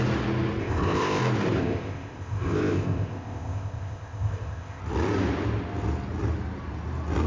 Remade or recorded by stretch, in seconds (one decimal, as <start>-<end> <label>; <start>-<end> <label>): 0.0-0.6 recorded; 0.6-1.2 remade; 1.2-1.6 recorded; 1.6-4.8 remade; 4.8-7.3 recorded